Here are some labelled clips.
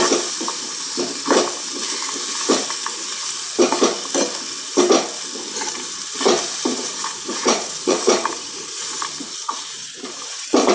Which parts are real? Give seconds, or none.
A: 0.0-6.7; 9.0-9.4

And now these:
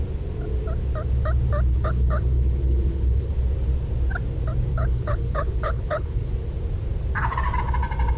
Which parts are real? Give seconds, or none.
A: 0.0-1.7; 3.3-4.7; 6.3-8.2

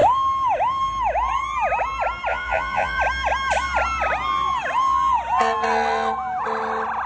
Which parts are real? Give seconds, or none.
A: 0.0-2.3; 3.0-7.1

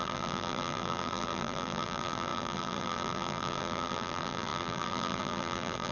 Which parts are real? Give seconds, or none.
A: none

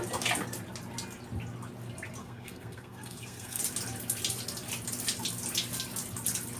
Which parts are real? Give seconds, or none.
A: 0.0-2.2; 3.6-6.6

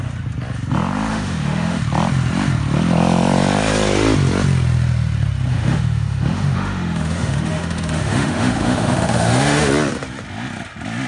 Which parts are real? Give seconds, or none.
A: 0.0-1.1; 1.8-5.5; 9.7-11.1

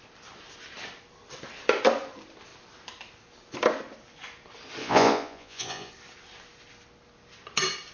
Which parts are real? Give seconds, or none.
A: 0.0-4.8; 5.9-7.9